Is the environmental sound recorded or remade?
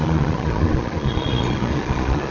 remade